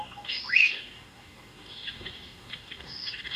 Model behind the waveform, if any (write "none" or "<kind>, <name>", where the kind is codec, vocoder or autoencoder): codec, DAC